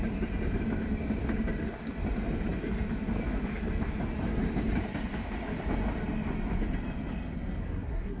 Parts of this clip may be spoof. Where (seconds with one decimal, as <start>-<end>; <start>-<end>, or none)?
7.6-8.2